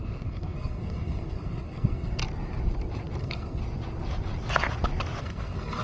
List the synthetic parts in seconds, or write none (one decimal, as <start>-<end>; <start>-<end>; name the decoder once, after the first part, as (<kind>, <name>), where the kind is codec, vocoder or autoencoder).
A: 0.0-2.2 (codec, SNAC); 3.2-3.6; 5.2-5.8